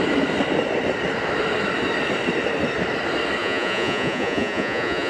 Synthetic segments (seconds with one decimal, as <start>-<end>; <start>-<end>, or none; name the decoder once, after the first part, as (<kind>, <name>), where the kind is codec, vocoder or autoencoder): 3.4-5.1 (vocoder, Vocos)